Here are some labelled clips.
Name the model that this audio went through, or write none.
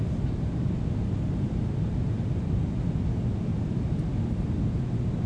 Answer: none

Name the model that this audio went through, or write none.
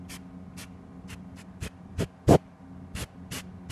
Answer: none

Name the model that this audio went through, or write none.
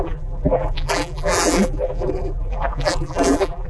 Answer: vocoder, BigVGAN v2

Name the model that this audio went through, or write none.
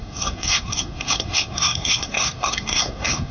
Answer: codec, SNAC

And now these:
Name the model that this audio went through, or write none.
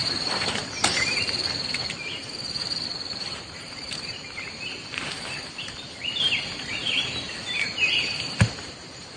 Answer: vocoder, BigVGAN v2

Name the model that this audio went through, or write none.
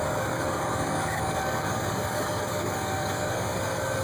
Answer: codec, DAC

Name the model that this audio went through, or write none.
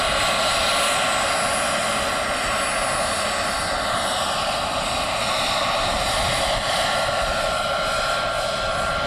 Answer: none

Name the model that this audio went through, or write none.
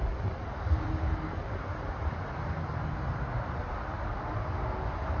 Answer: none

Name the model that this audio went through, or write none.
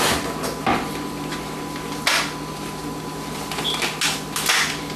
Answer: none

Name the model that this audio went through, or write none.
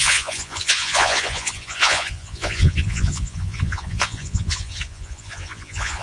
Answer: vocoder, Vocos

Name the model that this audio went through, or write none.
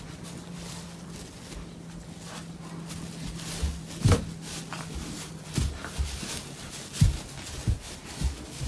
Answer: none